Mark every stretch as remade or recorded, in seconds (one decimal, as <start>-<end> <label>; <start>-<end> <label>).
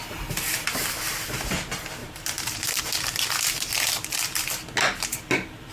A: 0.0-2.0 recorded; 2.0-2.8 remade; 2.8-5.7 recorded